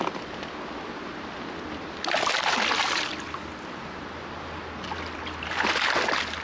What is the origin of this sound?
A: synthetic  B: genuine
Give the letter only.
B